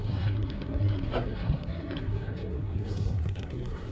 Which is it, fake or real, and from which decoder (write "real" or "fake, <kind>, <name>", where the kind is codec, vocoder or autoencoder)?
fake, codec, SNAC